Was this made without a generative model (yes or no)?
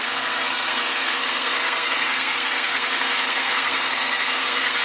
no